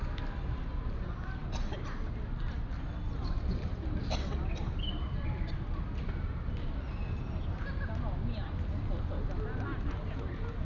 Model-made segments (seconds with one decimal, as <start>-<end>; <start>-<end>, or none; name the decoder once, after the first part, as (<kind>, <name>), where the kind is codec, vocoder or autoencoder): none